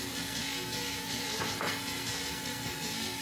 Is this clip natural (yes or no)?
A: no